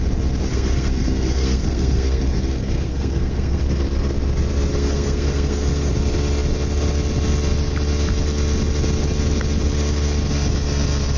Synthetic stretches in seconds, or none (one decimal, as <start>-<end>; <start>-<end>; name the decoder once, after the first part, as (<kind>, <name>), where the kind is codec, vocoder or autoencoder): 0.5-3.6 (codec, SNAC); 4.7-5.9

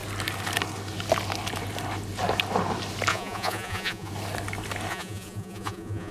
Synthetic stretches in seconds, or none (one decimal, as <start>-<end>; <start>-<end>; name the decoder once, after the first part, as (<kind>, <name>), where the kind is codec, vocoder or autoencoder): 3.1-4.1 (vocoder, Vocos); 4.9-6.1